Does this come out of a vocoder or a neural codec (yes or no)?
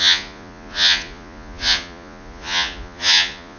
yes